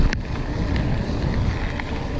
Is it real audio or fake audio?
real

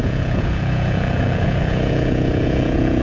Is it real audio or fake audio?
fake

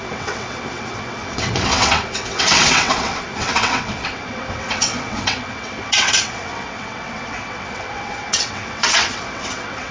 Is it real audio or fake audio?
fake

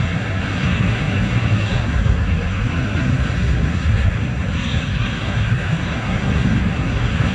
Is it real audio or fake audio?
fake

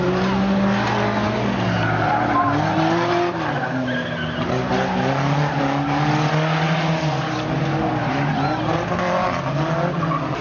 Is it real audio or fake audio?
real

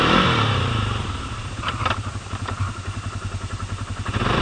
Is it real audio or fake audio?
fake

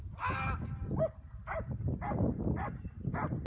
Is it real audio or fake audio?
real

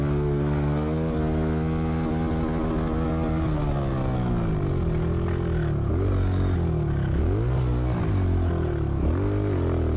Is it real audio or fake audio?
real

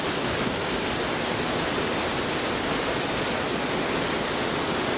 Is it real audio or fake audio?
real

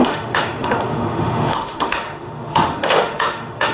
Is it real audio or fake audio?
fake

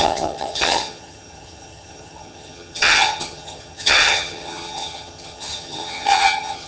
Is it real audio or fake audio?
fake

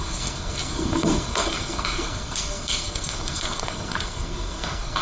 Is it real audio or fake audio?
fake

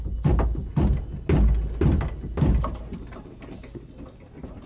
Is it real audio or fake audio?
real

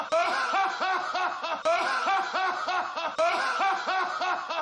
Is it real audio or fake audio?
real